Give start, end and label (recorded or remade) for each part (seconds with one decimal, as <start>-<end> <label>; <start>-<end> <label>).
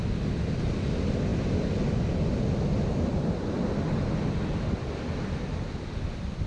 0.0-6.5 recorded